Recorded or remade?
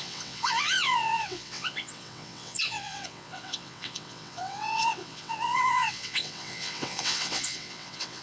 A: remade